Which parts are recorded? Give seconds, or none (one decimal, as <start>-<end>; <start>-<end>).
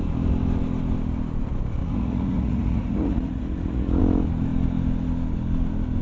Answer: 0.0-1.8; 4.0-6.0